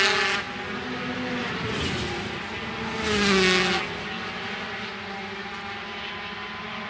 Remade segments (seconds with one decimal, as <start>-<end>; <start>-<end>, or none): none